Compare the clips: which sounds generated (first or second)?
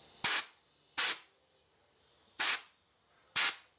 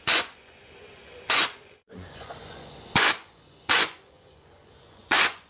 second